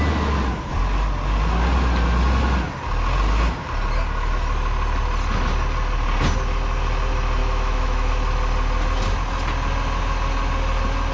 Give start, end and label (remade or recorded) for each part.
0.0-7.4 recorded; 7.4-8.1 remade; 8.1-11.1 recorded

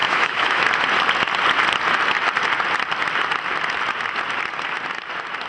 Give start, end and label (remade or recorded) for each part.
0.0-0.6 remade; 0.6-5.5 recorded

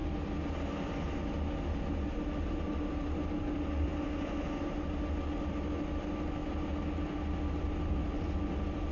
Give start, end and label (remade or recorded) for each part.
0.0-8.9 recorded

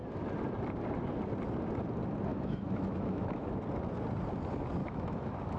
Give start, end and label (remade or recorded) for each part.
0.0-2.3 recorded; 2.3-3.5 remade; 3.5-4.8 recorded; 4.8-5.6 remade

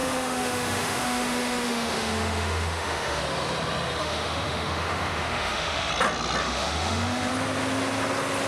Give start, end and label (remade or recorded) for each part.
0.0-3.2 remade; 3.2-4.0 recorded; 4.0-5.9 remade; 5.9-6.4 recorded; 6.4-7.3 remade; 7.3-8.5 recorded

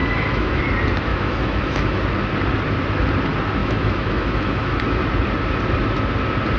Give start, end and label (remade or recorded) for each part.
0.0-0.6 remade; 0.6-1.1 recorded; 1.1-2.0 remade; 2.0-3.6 recorded; 3.6-4.8 remade; 4.8-6.6 recorded